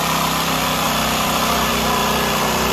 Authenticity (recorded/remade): remade